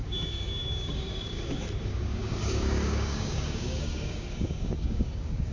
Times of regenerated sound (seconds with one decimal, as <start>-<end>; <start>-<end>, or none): 0.0-5.5